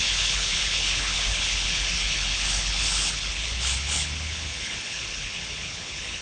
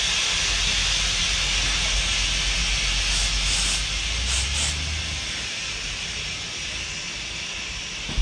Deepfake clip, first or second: first